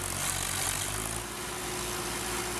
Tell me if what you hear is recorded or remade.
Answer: recorded